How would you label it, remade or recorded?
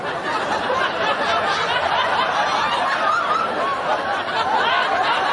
recorded